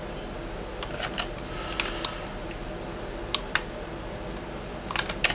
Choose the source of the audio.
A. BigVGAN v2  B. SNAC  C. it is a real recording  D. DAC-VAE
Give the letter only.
C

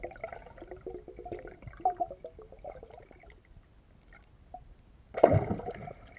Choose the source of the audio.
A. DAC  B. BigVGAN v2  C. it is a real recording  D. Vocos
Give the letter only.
B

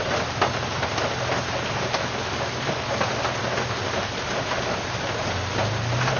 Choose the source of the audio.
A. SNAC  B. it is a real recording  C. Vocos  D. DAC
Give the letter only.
B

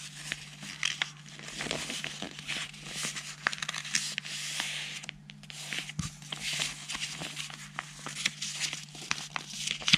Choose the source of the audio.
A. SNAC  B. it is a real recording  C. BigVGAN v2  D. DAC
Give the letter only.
B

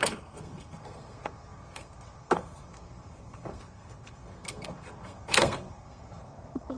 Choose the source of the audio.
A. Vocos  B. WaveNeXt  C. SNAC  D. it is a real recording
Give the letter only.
C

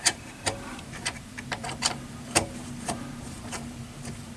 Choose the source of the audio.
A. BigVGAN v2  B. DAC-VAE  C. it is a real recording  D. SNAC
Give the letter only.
A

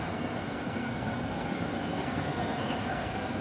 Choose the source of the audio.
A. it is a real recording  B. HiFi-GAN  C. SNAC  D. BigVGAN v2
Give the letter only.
C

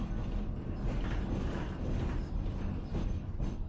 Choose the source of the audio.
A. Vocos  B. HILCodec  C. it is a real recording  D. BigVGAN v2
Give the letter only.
C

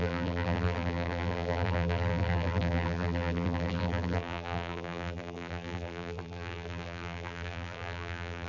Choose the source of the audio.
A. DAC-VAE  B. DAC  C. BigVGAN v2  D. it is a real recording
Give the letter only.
C